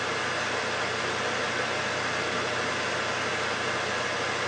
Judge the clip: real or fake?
real